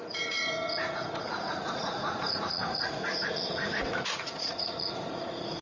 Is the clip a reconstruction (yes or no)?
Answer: yes